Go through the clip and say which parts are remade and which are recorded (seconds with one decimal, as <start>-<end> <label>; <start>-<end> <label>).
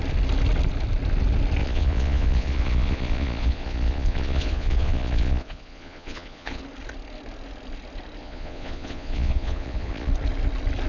0.0-1.6 recorded; 1.6-6.6 remade; 6.6-8.2 recorded; 8.2-10.1 remade; 10.1-10.9 recorded